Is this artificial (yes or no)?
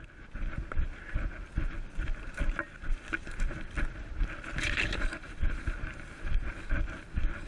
no